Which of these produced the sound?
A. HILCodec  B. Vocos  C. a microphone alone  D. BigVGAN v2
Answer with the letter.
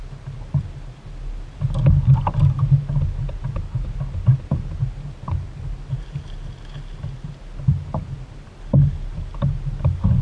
C